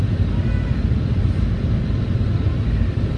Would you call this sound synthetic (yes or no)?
no